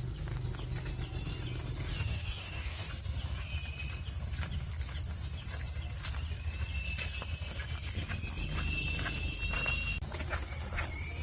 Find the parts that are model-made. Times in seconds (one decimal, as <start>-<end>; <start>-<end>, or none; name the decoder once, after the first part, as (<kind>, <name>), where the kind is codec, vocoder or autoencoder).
1.9-2.9 (codec, DAC)